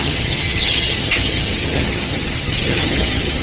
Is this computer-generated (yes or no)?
yes